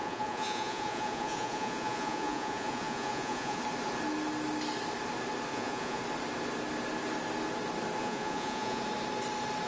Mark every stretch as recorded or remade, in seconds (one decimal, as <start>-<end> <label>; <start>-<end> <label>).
0.0-3.6 remade; 3.6-5.5 recorded; 5.5-6.0 remade; 6.0-8.0 recorded; 8.0-8.8 remade; 8.8-9.7 recorded